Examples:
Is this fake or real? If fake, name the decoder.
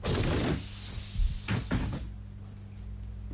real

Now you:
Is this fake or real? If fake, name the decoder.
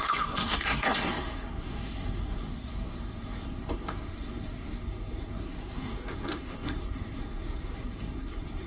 fake, codec, SNAC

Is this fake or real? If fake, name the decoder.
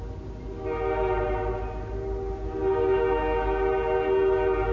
real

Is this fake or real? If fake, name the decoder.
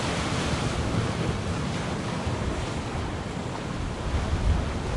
real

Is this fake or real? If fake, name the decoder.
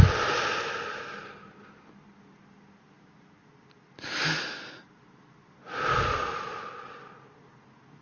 real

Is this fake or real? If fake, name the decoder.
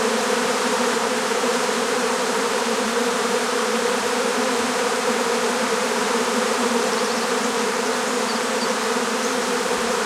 fake, vocoder, BigVGAN v2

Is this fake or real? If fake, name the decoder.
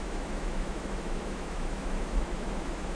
fake, autoencoder, DAC-VAE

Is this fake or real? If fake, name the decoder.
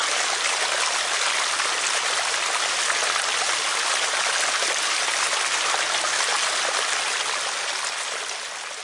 real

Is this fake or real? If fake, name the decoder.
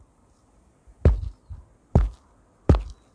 real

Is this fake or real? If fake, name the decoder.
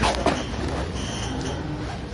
real